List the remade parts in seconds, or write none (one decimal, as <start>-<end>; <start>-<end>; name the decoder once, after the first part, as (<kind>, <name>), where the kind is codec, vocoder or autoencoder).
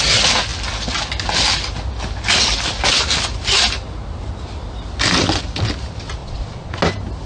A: 6.2-6.8 (vocoder, Vocos)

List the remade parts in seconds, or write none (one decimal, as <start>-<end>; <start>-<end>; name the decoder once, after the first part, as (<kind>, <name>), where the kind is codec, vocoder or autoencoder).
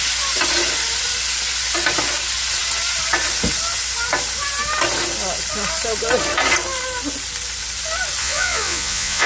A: 8.2-9.3 (vocoder, Vocos)